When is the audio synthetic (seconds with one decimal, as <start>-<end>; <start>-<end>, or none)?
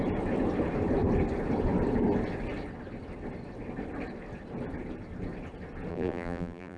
5.9-6.8